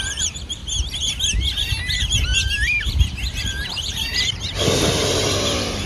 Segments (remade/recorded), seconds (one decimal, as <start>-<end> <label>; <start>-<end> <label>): 0.0-0.6 remade; 0.6-1.7 recorded; 1.7-5.9 remade